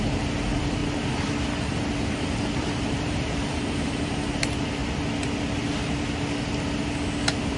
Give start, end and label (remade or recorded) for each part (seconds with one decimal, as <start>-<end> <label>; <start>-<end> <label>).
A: 0.0-0.8 remade; 0.8-2.6 recorded; 2.6-4.8 remade; 4.8-7.6 recorded

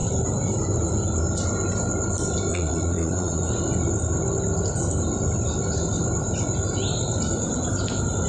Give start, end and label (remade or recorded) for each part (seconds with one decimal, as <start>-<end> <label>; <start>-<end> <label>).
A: 0.0-2.5 recorded; 2.5-3.5 remade; 3.5-8.3 recorded

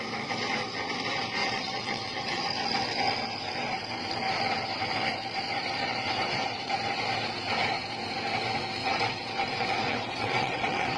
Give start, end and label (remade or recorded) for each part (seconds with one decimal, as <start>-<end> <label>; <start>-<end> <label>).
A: 0.0-1.4 recorded; 1.4-2.4 remade; 2.4-5.8 recorded; 5.8-6.7 remade; 6.7-8.8 recorded; 8.8-11.0 remade

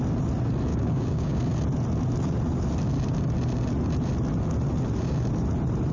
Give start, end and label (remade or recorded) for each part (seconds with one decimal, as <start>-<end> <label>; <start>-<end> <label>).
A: 0.0-0.7 recorded; 0.7-1.4 remade; 1.4-5.9 recorded

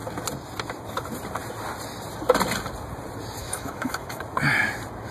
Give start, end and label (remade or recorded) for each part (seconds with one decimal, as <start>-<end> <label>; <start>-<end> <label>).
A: 0.0-3.4 recorded; 3.4-4.2 remade; 4.2-5.1 recorded

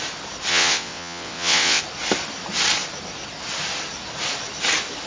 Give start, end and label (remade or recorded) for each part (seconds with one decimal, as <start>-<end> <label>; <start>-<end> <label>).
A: 0.0-0.5 recorded; 0.5-1.8 remade; 1.8-5.1 recorded